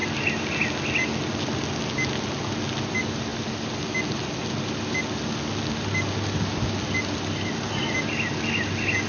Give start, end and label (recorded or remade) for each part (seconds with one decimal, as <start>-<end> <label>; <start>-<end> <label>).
0.0-9.1 recorded